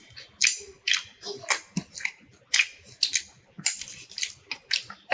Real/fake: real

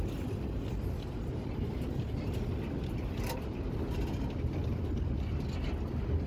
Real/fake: real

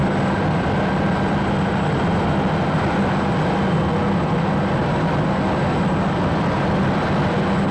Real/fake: real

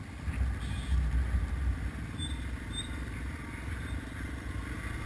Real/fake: real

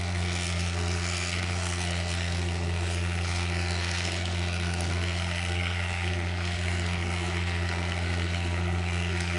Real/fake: fake